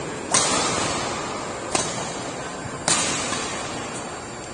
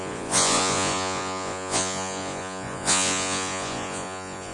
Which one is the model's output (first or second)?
second